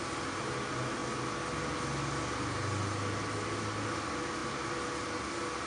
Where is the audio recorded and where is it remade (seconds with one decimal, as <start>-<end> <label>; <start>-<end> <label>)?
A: 0.0-5.7 recorded